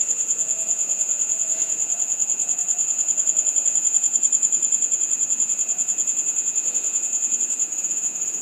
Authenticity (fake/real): fake